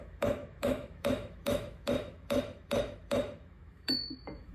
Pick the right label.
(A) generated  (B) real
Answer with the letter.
A